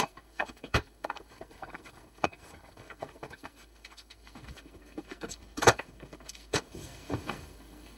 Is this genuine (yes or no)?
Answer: no